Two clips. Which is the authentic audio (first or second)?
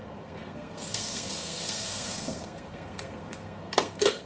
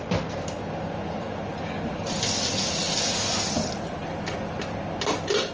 second